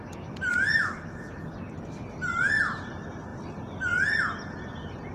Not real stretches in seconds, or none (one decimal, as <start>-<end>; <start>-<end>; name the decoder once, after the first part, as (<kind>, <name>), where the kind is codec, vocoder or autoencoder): none